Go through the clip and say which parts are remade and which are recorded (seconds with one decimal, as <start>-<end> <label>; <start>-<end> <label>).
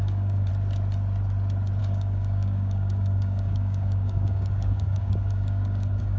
0.0-0.5 remade; 0.5-1.8 recorded; 1.8-6.2 remade